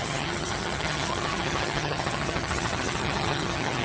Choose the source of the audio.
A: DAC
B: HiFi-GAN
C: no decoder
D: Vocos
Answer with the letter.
B